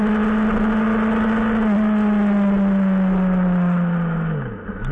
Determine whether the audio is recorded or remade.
recorded